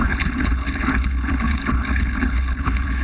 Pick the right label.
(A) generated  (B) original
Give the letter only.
A